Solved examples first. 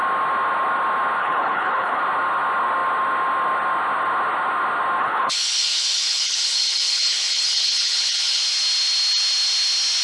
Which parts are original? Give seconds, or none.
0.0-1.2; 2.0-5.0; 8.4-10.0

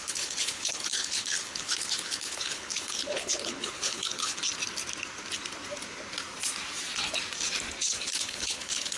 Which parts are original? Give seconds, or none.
4.4-7.8

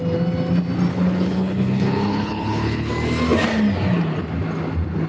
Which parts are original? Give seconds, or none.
0.0-0.9; 2.9-5.1

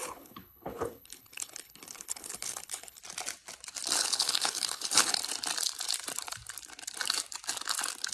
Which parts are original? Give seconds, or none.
3.0-4.0; 5.2-8.1

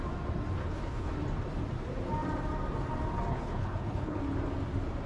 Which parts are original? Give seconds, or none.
0.0-0.6; 1.1-3.3; 4.2-5.1

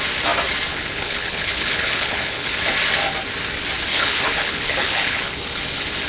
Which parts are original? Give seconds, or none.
0.0-0.7; 2.5-3.9; 5.4-6.1

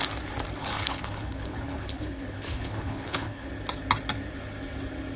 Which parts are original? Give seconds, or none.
0.0-0.6; 3.5-5.2